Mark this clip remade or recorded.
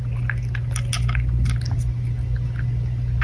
recorded